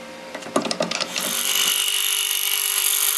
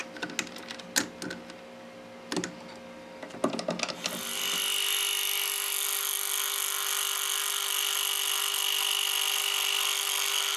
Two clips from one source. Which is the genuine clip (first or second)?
second